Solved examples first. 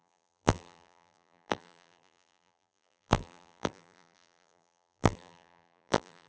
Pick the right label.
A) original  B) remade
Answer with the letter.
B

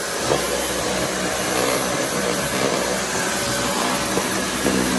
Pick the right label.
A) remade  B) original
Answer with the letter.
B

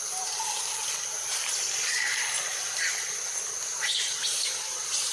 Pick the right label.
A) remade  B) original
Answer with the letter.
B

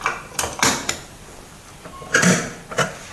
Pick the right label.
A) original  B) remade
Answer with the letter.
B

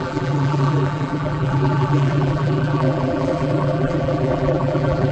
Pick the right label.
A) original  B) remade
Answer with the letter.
B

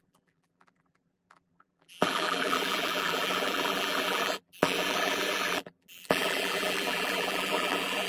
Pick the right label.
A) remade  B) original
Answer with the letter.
A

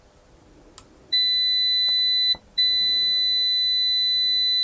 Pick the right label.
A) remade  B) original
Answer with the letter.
B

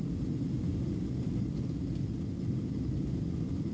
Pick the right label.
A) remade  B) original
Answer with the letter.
A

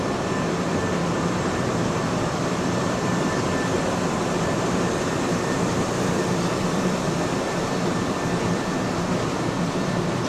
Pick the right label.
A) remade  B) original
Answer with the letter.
A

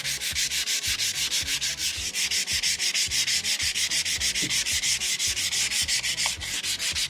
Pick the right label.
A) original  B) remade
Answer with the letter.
B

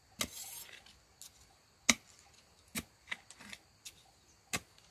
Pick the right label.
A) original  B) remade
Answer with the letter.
A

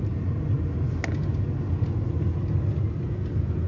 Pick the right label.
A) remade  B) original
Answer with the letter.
B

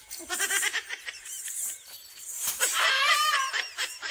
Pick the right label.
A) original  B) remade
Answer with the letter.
B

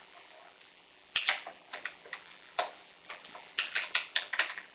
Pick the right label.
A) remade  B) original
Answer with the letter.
A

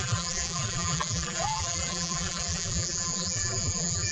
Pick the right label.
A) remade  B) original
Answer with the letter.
A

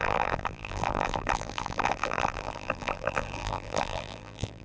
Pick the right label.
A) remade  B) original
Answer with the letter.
A